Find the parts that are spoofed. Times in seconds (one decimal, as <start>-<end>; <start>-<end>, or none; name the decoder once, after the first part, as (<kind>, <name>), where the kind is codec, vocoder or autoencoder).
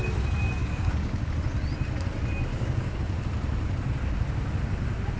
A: 0.6-1.3 (codec, DAC); 2.5-3.0